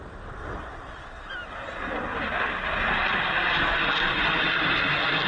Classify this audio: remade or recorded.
recorded